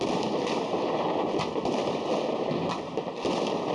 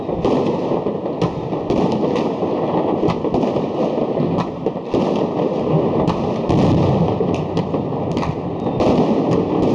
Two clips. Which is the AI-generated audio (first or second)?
first